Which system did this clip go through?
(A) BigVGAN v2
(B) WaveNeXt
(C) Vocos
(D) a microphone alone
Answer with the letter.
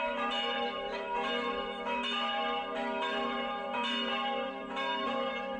A